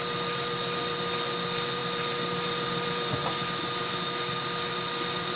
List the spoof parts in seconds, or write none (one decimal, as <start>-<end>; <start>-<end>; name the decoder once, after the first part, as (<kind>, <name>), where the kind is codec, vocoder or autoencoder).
none